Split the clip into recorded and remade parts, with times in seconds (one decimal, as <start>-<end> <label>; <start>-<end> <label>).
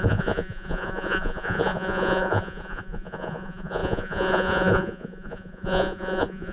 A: 0.0-6.5 remade